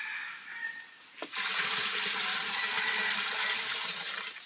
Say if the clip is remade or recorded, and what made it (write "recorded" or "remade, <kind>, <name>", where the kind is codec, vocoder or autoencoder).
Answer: recorded